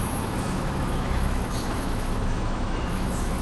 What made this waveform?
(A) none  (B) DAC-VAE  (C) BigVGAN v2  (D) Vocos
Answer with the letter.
B